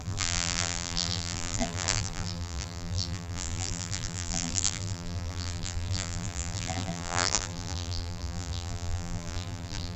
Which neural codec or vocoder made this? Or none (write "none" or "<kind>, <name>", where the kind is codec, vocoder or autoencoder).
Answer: vocoder, BigVGAN v2